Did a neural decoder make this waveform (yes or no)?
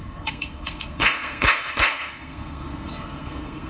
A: yes